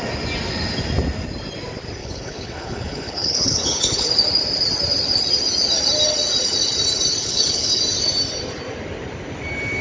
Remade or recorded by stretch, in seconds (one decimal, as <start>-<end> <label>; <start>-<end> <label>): 0.0-2.0 recorded; 2.0-4.1 remade; 4.1-7.2 recorded; 7.2-7.8 remade; 7.8-9.8 recorded